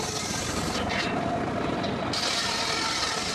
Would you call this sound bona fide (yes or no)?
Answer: yes